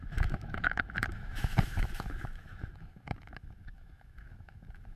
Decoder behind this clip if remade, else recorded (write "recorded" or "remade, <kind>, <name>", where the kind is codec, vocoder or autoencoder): remade, autoencoder, DAC-VAE